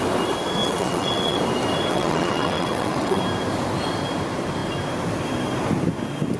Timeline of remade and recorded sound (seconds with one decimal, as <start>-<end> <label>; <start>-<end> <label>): 0.0-0.6 recorded; 0.6-1.4 remade; 1.4-1.9 recorded; 1.9-3.2 remade; 3.2-6.4 recorded